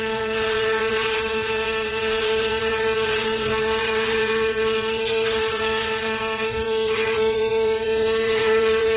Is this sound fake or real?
fake